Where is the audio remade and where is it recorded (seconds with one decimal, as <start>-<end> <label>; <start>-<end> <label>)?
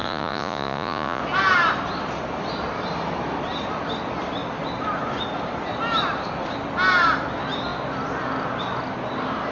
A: 0.0-1.2 remade; 1.2-9.5 recorded